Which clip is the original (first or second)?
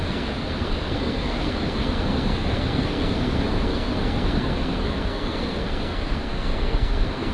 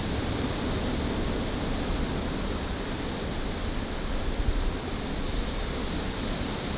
second